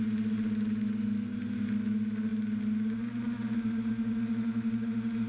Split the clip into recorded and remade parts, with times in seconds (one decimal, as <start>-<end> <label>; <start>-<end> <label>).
0.0-5.3 recorded